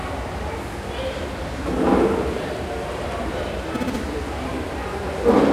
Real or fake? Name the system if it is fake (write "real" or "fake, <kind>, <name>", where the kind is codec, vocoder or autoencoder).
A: real